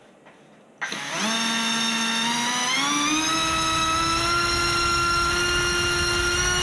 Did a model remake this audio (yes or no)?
no